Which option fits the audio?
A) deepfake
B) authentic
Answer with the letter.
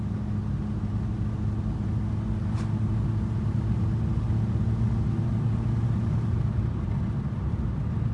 B